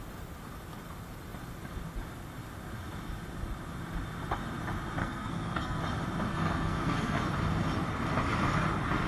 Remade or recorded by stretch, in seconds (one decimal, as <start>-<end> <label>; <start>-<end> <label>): 0.0-5.0 recorded; 5.0-5.8 remade; 5.8-6.3 recorded; 6.3-7.3 remade; 7.3-9.1 recorded